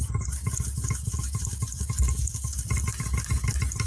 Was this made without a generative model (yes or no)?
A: yes